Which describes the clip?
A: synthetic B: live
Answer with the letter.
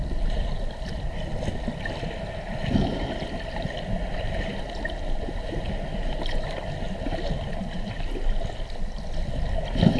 B